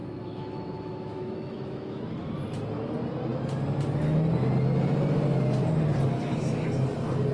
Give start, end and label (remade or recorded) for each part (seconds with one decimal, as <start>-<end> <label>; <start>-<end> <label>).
0.0-2.0 remade; 2.0-7.3 recorded